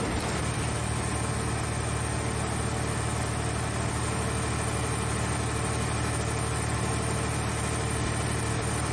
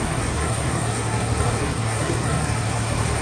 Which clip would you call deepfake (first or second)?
second